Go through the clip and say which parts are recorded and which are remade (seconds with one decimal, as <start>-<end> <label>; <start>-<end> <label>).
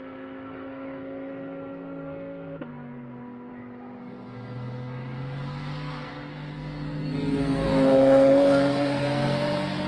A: 0.0-3.5 remade; 3.5-4.0 recorded; 4.0-9.9 remade